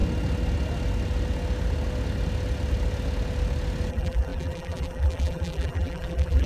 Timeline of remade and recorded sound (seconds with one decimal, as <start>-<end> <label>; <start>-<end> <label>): 0.0-3.9 recorded; 3.9-6.5 remade

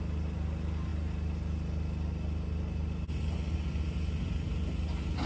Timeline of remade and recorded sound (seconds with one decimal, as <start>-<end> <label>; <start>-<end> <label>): 0.0-5.3 recorded

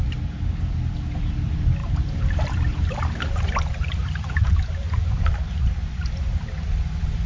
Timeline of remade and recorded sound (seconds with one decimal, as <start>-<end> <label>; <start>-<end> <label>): 0.0-1.8 recorded; 1.8-5.1 remade; 5.1-7.3 recorded

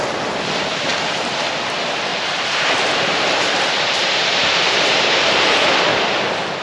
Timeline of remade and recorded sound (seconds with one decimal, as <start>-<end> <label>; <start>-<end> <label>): 0.0-0.9 recorded; 0.9-1.4 remade; 1.4-2.1 recorded; 2.1-5.7 remade; 5.7-6.6 recorded

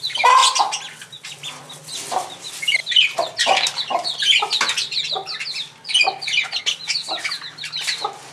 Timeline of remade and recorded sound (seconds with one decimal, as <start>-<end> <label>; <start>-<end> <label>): 0.0-8.3 recorded

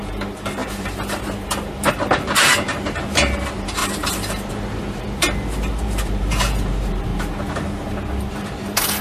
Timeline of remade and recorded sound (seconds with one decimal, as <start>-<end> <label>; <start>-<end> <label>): 0.0-7.1 remade; 7.1-8.3 recorded; 8.3-9.0 remade